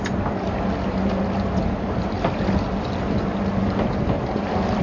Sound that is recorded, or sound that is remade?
recorded